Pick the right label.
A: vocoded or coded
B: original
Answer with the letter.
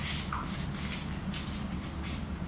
B